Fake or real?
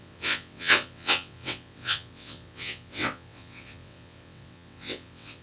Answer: fake